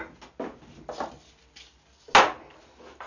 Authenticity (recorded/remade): recorded